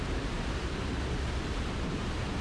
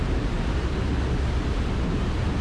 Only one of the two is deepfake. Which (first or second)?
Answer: first